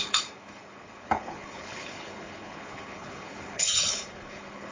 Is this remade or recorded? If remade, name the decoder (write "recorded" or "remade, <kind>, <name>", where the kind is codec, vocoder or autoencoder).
remade, codec, HILCodec